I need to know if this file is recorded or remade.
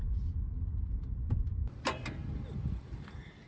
recorded